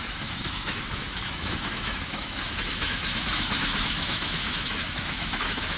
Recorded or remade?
remade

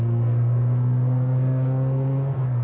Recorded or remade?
remade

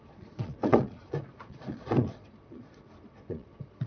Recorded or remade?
remade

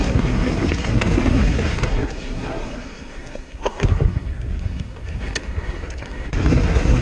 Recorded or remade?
remade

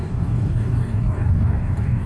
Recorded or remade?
remade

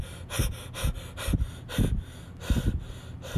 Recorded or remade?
recorded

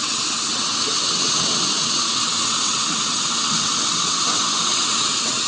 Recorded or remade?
remade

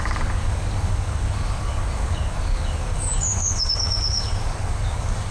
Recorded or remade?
remade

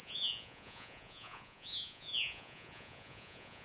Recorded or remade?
remade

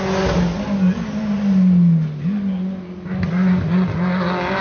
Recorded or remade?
recorded